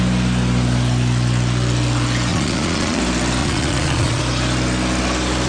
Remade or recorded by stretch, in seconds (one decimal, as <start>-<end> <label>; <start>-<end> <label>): 0.0-2.3 recorded; 2.3-3.0 remade; 3.0-3.4 recorded; 3.4-4.2 remade; 4.2-5.5 recorded